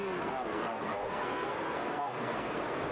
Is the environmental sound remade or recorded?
remade